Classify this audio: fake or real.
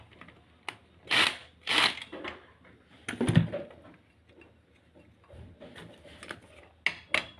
real